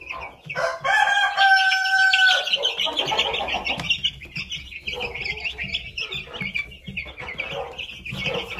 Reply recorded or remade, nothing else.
recorded